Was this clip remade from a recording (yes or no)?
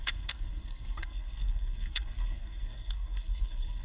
yes